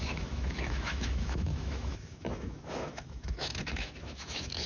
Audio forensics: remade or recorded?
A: remade